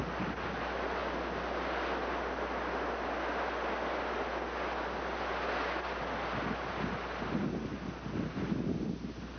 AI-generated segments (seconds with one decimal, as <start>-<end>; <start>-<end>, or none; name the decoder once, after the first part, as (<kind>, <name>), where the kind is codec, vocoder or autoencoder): none